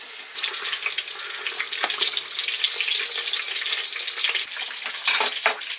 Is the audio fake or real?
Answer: real